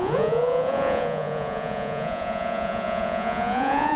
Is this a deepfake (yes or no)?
yes